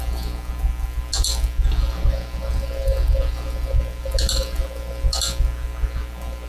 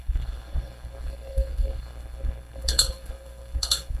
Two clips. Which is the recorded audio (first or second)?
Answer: first